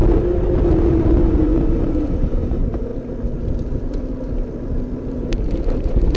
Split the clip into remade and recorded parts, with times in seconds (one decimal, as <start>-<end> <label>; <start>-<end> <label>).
0.0-1.1 recorded; 1.1-2.9 remade; 2.9-5.8 recorded; 5.8-6.2 remade